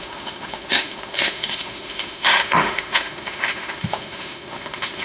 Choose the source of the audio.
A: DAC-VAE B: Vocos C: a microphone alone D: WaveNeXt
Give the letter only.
A